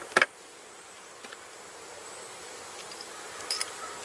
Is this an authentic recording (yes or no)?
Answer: yes